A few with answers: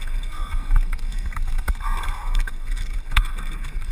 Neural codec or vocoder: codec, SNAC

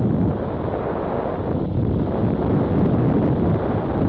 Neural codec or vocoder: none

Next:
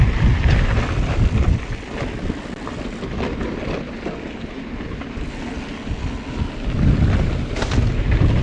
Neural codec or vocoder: none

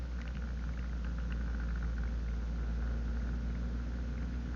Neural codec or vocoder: none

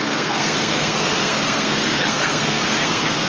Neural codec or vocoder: codec, SNAC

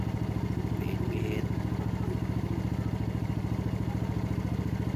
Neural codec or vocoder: none